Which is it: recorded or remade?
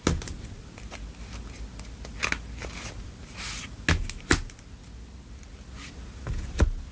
recorded